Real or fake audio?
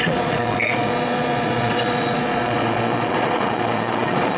fake